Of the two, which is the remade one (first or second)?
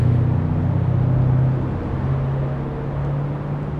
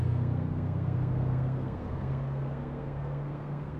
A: second